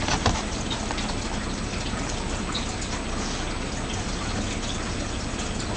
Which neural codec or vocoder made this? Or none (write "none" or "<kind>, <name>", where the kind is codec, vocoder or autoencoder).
none